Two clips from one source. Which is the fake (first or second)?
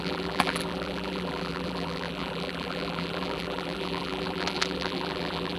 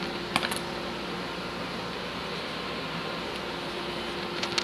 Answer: first